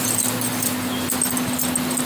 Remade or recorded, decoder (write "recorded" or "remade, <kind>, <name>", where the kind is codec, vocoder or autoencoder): recorded